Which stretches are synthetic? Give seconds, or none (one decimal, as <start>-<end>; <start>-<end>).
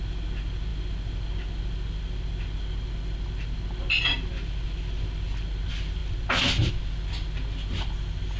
none